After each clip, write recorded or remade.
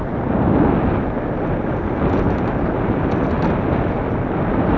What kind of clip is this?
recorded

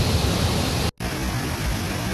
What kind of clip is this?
recorded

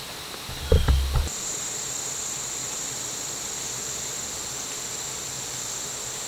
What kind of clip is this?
recorded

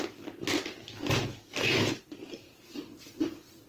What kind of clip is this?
recorded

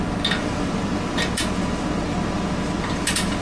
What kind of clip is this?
recorded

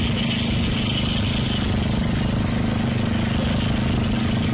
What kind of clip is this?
recorded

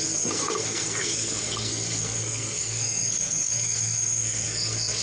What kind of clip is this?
remade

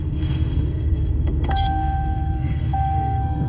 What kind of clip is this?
remade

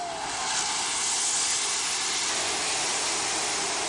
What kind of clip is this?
recorded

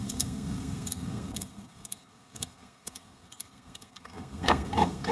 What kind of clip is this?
remade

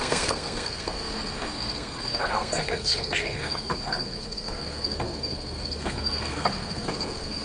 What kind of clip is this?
remade